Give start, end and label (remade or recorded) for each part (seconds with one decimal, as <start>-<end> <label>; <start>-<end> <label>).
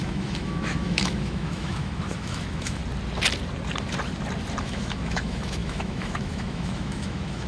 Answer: 0.0-2.8 remade; 2.8-4.6 recorded; 4.6-7.5 remade